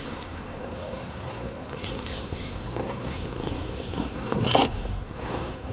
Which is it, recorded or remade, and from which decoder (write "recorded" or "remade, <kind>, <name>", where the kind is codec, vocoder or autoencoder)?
remade, codec, SNAC